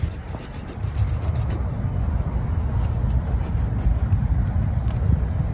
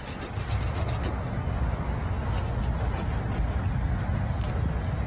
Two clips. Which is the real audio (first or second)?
second